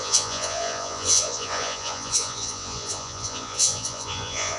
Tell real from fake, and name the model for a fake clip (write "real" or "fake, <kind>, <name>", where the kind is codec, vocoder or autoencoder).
fake, vocoder, Vocos